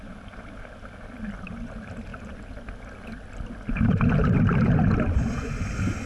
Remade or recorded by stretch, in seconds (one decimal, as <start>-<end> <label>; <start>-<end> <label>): 0.0-6.1 recorded